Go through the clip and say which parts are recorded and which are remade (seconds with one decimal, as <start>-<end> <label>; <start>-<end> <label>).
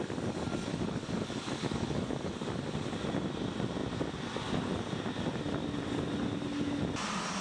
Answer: 0.0-0.7 recorded; 0.7-2.3 remade; 2.3-7.4 recorded